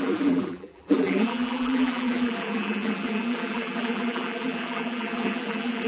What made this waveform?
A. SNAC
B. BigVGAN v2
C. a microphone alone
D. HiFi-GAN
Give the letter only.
B